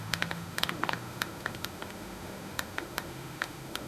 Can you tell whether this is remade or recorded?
remade